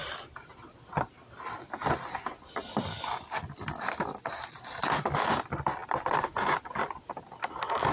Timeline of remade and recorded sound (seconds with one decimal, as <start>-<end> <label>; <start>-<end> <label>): 0.0-7.9 recorded

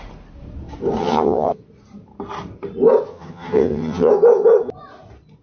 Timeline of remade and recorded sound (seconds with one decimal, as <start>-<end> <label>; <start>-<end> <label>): 0.0-1.0 recorded; 1.0-1.6 remade; 1.6-3.1 recorded; 3.1-4.1 remade; 4.1-5.4 recorded